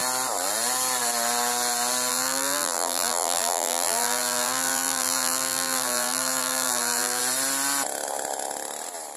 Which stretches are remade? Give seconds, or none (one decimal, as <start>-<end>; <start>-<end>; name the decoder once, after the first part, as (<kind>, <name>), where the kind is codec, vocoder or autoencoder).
2.1-7.2 (vocoder, BigVGAN v2)